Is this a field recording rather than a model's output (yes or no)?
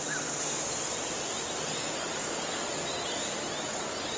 yes